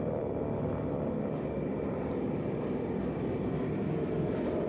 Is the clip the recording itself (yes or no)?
no